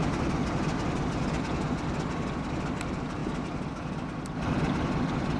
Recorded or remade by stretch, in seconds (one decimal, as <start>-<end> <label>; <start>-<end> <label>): 0.0-5.4 recorded